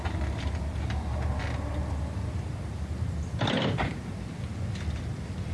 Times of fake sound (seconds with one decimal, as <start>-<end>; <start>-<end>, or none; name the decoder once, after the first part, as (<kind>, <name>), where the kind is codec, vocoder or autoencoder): none